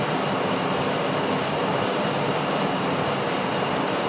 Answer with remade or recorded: recorded